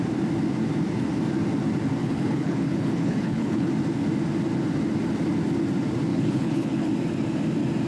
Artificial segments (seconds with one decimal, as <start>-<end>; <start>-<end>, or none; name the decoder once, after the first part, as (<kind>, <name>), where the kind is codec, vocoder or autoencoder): 2.0-3.7 (codec, HILCodec); 6.1-6.9